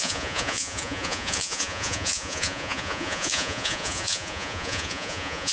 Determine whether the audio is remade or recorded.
remade